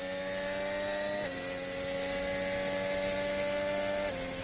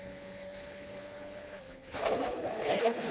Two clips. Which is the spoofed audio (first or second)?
second